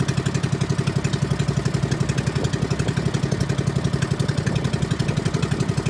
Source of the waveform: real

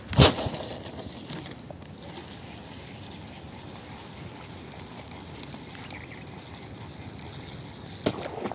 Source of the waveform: real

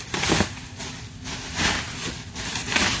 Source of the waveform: real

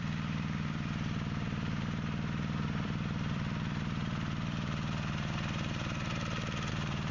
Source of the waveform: fake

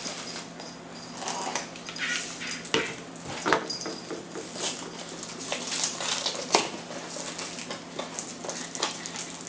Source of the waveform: real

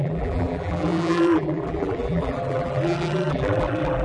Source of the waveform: fake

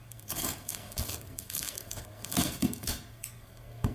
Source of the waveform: fake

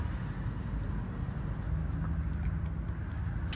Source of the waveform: real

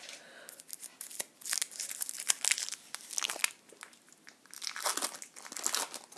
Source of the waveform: real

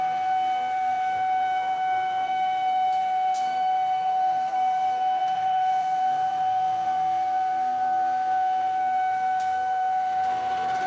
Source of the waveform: fake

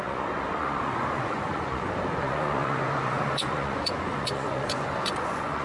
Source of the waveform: fake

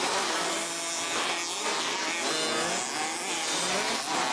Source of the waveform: real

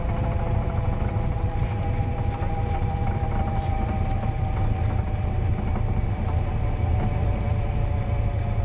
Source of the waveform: real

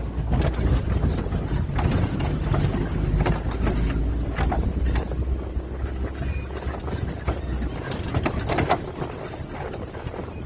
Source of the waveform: real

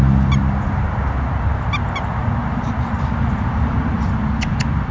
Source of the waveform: real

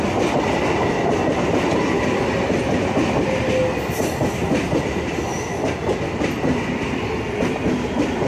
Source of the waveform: real